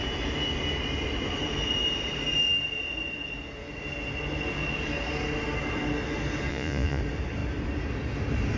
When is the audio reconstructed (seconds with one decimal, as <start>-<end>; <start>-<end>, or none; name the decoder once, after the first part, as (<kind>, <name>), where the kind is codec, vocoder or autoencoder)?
6.5-7.0 (vocoder, Vocos)